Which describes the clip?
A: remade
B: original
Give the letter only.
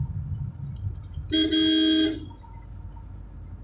B